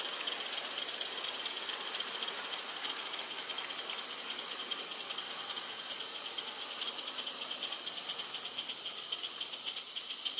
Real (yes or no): yes